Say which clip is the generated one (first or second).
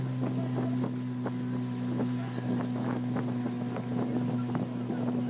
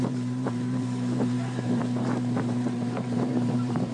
second